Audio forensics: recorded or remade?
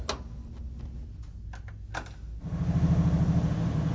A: recorded